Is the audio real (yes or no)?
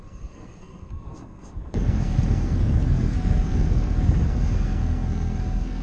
no